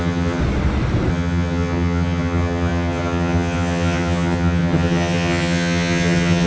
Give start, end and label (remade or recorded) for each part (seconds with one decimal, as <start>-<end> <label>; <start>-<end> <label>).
0.0-0.4 remade; 0.4-1.1 recorded; 1.1-6.5 remade